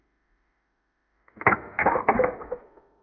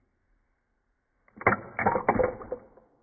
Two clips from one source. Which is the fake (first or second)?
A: first